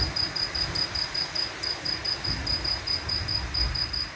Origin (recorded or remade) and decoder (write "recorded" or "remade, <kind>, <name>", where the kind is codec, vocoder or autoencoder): recorded